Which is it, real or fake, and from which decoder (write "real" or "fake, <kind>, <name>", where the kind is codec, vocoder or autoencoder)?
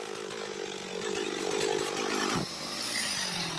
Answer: real